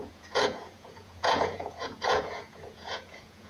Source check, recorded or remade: remade